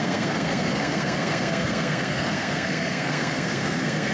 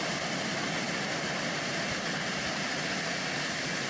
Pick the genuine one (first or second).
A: second